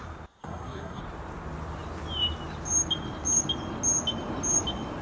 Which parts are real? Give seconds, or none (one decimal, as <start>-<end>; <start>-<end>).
0.0-0.4; 1.0-5.0